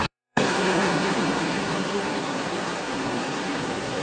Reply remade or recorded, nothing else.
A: remade